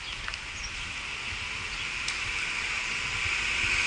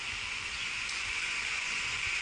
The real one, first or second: first